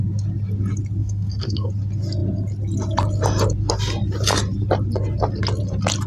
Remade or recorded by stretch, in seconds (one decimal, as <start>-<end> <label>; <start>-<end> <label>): 0.0-1.0 recorded; 1.0-1.7 remade; 1.7-6.1 recorded